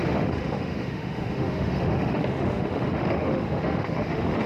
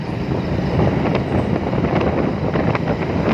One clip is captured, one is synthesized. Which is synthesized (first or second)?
first